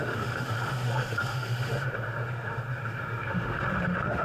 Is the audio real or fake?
fake